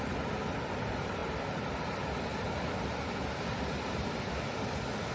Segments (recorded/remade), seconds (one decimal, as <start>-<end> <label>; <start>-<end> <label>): 0.0-5.1 recorded